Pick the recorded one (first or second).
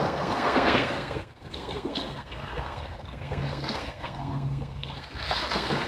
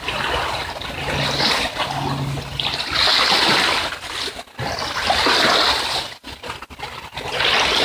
second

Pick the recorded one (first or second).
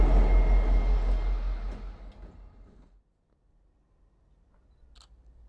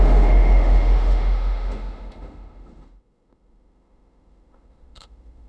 first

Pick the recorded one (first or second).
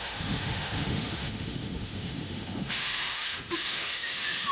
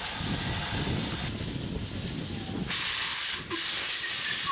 second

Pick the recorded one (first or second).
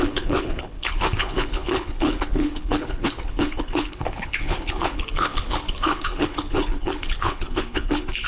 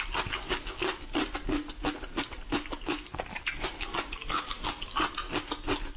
second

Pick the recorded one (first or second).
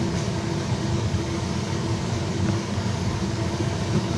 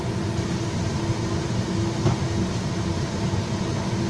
second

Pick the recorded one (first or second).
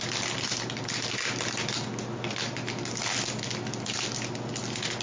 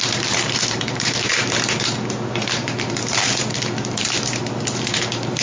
first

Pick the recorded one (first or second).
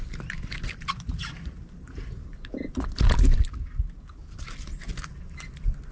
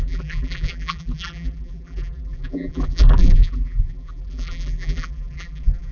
first